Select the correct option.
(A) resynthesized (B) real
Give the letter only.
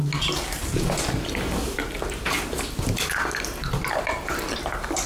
B